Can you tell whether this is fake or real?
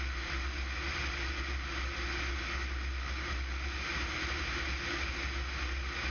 real